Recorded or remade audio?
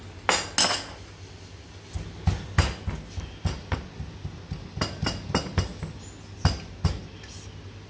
recorded